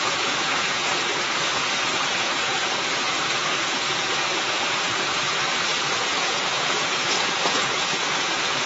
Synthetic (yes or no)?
yes